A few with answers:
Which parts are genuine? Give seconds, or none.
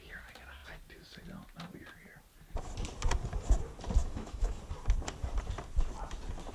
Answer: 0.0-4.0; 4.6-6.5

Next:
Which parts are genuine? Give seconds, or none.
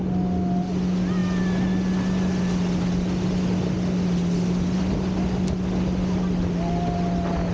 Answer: 0.0-7.5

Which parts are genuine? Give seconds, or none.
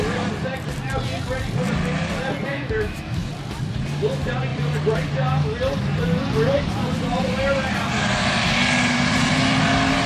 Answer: 0.0-2.5; 3.3-10.1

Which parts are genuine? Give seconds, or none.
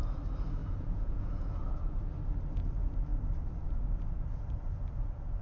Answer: 0.0-0.6; 2.1-5.4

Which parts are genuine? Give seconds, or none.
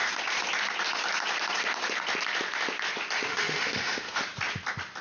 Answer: 0.0-3.3; 4.2-5.0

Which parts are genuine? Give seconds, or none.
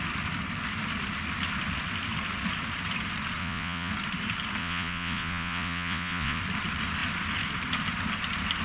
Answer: 0.0-3.4; 3.9-4.6; 6.4-8.6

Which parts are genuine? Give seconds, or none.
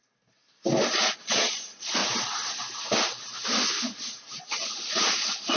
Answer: 0.0-0.9; 2.0-4.4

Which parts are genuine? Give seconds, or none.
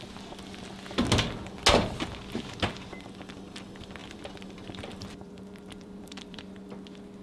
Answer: 0.0-4.0; 6.6-7.2